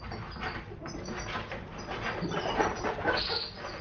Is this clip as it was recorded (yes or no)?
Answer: yes